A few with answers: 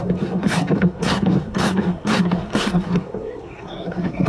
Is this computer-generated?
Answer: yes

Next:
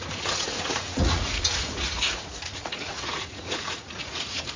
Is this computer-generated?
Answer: yes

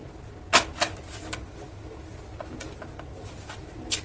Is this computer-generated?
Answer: no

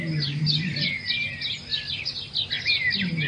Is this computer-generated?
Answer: no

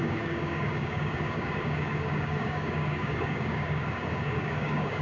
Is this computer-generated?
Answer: yes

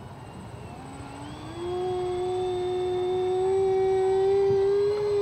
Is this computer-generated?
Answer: no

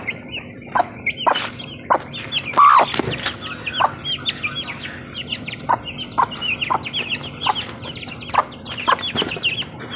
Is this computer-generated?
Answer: no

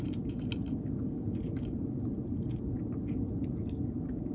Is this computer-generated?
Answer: no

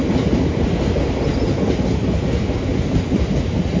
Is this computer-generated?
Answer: no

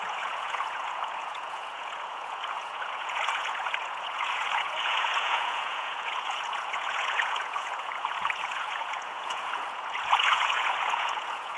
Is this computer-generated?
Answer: yes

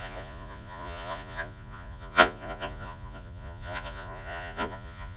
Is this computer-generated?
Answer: yes